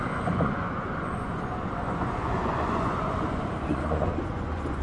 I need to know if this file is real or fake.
fake